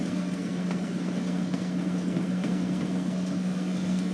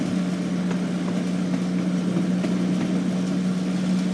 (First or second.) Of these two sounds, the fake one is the first